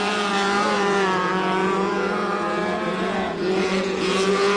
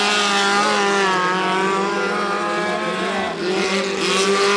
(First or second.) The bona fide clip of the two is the second